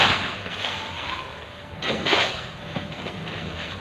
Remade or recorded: remade